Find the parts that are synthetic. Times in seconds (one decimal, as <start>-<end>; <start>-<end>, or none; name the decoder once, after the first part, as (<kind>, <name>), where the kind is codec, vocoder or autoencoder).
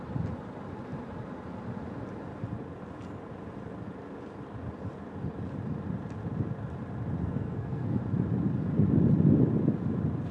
7.2-8.0 (codec, SNAC)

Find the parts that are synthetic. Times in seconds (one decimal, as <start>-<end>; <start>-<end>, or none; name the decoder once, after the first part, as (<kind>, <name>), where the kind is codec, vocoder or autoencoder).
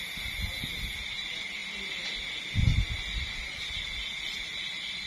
none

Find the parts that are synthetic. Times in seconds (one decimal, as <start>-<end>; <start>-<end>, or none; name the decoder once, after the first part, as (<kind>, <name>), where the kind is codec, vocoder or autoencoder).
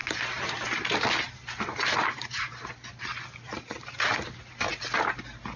none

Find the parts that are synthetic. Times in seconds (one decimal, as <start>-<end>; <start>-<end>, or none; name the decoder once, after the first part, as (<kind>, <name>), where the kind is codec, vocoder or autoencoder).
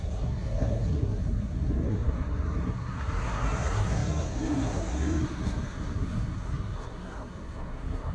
0.0-8.1 (codec, SNAC)